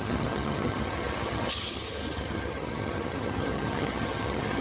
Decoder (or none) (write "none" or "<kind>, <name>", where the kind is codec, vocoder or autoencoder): vocoder, HiFi-GAN